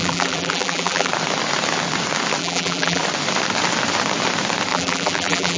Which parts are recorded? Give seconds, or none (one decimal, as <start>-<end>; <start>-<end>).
1.1-2.4; 3.0-4.7